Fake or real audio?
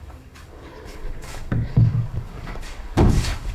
fake